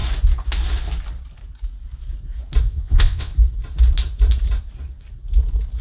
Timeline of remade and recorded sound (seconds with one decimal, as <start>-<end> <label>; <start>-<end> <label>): 0.0-2.6 recorded; 2.6-3.3 remade; 3.3-5.8 recorded